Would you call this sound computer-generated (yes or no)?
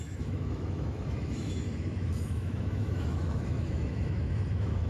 yes